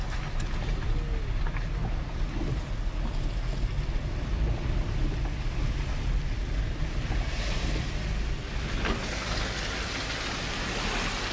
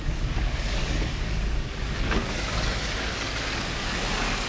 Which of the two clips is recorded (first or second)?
first